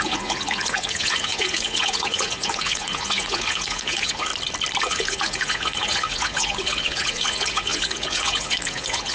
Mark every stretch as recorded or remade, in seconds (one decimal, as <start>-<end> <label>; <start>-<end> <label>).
0.0-4.3 remade; 4.3-4.8 recorded; 4.8-9.1 remade